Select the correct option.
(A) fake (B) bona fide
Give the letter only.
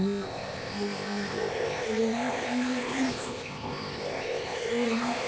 A